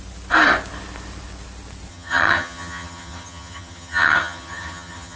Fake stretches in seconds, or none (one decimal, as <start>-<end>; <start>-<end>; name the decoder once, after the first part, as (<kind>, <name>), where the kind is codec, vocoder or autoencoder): 1.9-5.2 (vocoder, HiFi-GAN)